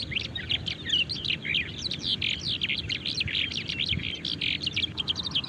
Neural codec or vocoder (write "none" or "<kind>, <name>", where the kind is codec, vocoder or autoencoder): none